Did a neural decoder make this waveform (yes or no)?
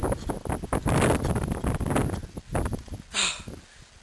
no